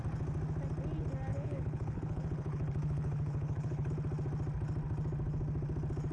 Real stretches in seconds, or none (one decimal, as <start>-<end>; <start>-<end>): 0.0-1.3; 3.9-6.1